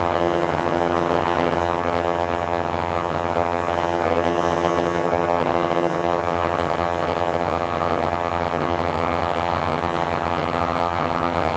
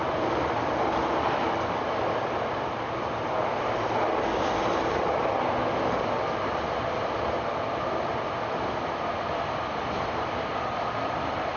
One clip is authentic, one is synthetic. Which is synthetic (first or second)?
first